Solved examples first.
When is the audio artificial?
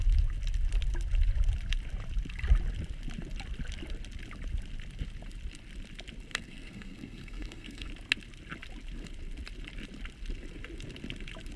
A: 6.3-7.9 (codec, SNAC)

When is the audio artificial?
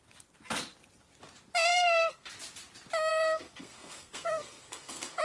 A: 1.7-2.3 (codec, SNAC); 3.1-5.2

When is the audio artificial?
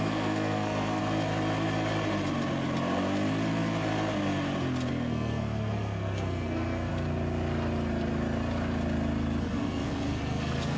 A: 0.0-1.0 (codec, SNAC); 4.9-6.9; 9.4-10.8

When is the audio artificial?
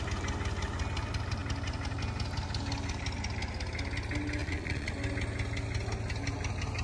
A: 4.4-4.9 (vocoder, Vocos)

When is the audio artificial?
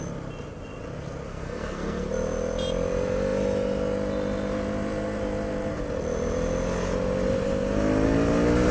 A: 1.3-2.1 (codec, SNAC)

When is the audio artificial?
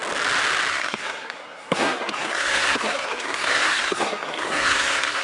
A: 0.7-5.2 (codec, SNAC)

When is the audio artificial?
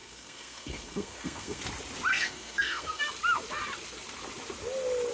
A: 0.0-1.6 (codec, SNAC); 2.1-3.0